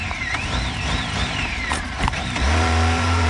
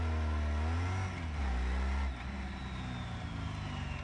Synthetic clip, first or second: first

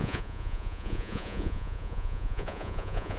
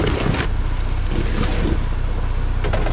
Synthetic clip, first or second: first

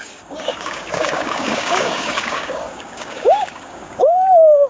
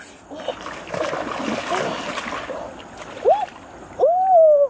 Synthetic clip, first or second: first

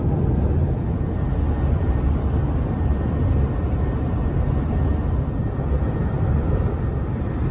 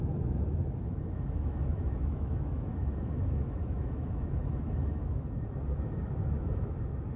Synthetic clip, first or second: second